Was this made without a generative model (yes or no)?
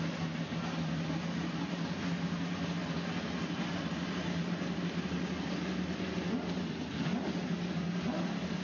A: yes